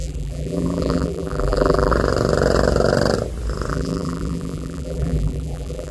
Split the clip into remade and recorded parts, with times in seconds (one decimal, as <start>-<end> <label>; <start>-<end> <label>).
0.0-1.9 remade; 1.9-3.7 recorded; 3.7-5.9 remade